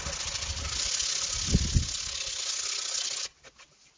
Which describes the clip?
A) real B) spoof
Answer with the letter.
A